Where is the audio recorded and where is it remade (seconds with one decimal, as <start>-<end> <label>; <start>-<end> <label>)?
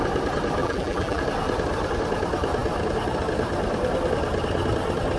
0.0-0.6 recorded; 0.6-1.2 remade; 1.2-5.2 recorded